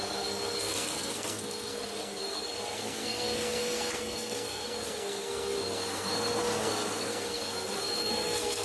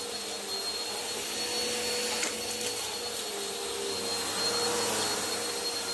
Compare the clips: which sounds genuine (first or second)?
second